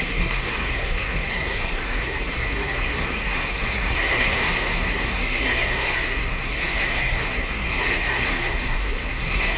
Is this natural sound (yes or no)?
no